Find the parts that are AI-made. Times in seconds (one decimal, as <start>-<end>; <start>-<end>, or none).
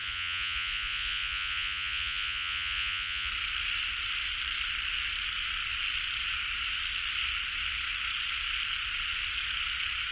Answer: 0.0-3.3